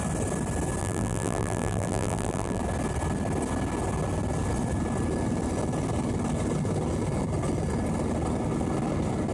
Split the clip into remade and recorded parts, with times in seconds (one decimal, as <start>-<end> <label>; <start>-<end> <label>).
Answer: 0.0-0.8 recorded; 0.8-2.6 remade; 2.6-9.3 recorded